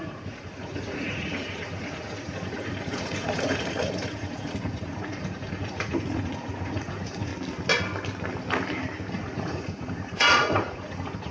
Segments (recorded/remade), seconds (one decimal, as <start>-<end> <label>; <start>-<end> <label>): 0.0-7.3 remade; 7.3-9.1 recorded; 9.1-11.3 remade